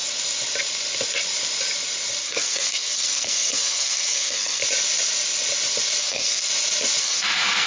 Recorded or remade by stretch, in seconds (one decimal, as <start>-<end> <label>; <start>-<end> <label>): 0.0-2.2 recorded; 2.2-4.6 remade; 4.6-6.0 recorded; 6.0-6.5 remade; 6.5-7.0 recorded; 7.0-7.7 remade